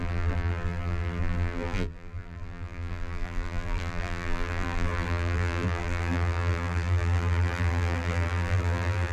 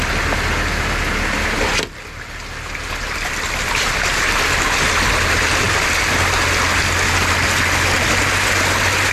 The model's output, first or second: first